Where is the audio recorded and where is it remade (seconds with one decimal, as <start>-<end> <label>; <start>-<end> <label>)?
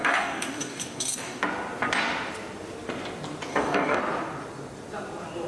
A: 0.0-1.4 remade; 1.4-3.5 recorded; 3.5-4.0 remade; 4.0-5.5 recorded